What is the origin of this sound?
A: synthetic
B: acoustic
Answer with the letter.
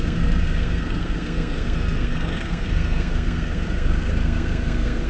A